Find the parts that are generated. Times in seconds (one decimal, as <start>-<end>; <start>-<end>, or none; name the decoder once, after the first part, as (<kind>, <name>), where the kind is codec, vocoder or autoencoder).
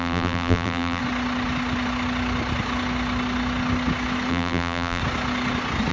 0.0-1.0 (vocoder, BigVGAN v2); 4.3-5.0